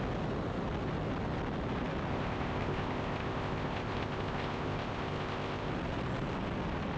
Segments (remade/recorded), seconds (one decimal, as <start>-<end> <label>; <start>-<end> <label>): 0.0-2.1 recorded; 2.1-5.7 remade; 5.7-7.0 recorded